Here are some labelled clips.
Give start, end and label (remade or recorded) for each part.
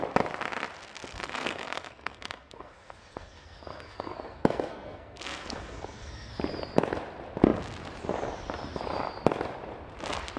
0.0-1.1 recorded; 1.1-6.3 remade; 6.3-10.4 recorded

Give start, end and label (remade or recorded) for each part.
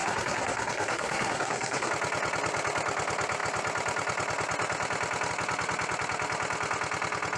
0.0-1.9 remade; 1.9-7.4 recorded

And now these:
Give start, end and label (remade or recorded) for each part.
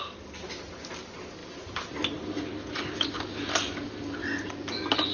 0.0-5.1 recorded